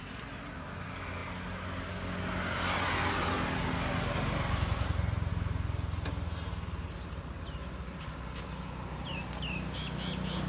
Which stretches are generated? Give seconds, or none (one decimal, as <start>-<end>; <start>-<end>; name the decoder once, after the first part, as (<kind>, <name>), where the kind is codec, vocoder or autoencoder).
none

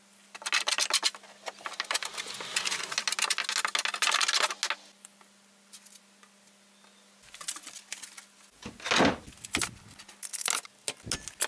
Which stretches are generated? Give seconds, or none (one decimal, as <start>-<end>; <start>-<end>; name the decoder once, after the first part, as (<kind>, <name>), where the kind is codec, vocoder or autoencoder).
none

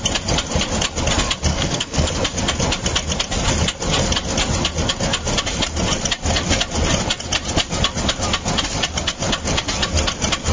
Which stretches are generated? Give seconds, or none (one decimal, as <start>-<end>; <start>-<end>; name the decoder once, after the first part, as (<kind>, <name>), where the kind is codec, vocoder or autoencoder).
1.5-2.1 (codec, SNAC)

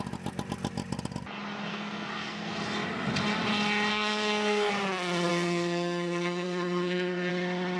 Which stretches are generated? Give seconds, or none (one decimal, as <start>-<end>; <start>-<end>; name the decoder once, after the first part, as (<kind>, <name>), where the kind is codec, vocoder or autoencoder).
1.7-2.5 (codec, SNAC); 3.9-4.7; 5.3-7.3

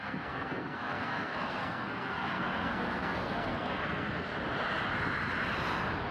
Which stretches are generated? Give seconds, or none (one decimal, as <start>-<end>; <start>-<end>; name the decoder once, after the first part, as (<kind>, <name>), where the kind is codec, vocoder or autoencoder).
0.0-4.3 (codec, SNAC)

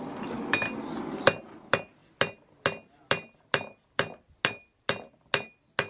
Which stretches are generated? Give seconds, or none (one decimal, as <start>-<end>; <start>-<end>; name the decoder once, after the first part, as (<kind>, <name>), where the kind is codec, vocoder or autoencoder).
none

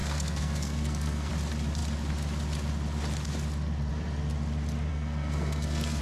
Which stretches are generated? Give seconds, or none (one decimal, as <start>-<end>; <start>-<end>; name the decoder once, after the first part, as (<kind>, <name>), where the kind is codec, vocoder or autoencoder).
0.0-1.3 (codec, SNAC); 4.9-6.0